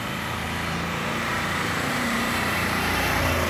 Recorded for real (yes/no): no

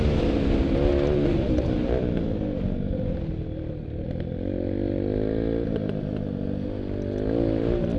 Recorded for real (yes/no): yes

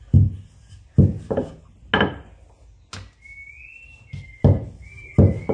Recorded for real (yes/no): yes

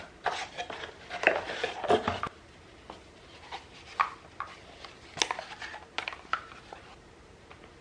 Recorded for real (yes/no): yes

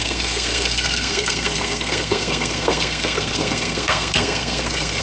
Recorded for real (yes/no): no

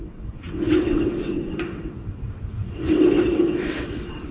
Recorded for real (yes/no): no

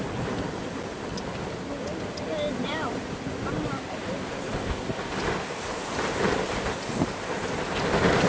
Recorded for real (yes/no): yes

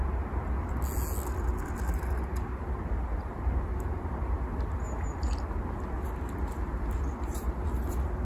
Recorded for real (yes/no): yes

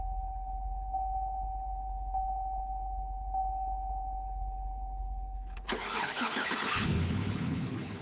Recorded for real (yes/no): no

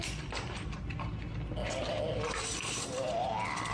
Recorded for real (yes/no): yes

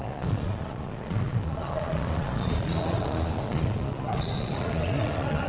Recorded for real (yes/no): no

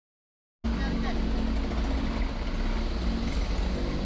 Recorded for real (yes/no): yes